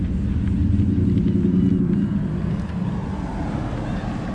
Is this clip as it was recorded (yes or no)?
yes